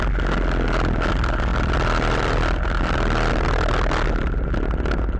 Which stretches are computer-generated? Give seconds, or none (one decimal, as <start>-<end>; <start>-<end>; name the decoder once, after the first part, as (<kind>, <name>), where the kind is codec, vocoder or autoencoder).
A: 1.5-4.5 (vocoder, BigVGAN v2)